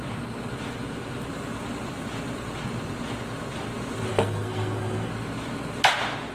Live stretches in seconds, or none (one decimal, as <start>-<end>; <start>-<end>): 0.0-4.1; 5.1-6.3